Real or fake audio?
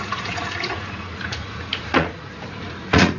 fake